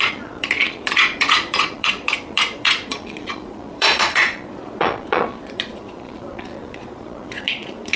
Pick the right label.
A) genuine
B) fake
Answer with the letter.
B